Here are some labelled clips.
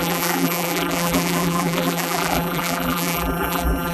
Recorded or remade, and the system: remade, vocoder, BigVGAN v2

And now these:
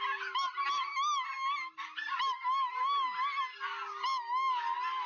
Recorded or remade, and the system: recorded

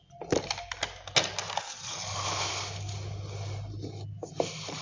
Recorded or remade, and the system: recorded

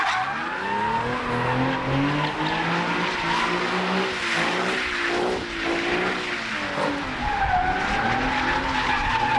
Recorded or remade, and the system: recorded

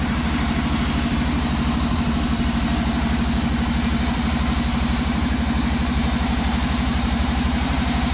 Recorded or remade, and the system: remade, vocoder, BigVGAN v2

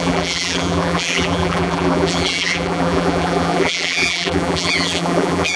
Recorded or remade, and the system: remade, vocoder, BigVGAN v2